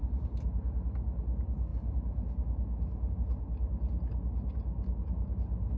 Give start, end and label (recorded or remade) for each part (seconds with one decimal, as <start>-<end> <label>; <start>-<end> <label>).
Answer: 0.0-5.8 recorded